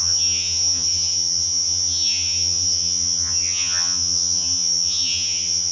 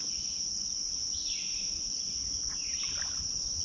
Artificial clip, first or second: first